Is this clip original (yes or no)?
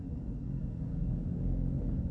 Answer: no